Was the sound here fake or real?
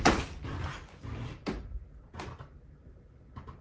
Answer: real